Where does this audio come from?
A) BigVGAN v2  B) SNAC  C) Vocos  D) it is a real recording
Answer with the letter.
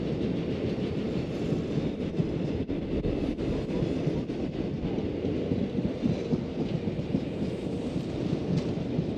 D